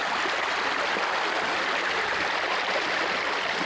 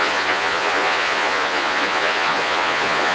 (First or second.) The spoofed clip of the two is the second